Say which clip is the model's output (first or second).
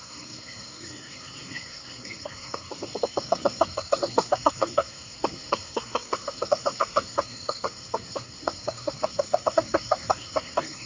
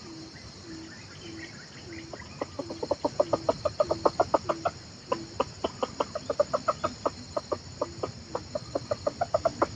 first